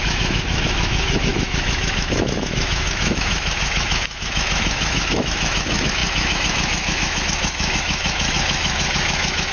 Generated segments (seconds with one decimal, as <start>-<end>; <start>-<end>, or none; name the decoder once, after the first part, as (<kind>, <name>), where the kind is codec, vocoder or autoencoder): 0.0-9.5 (autoencoder, DAC-VAE)